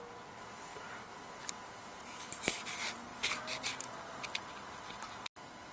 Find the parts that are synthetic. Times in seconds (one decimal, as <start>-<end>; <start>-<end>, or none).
none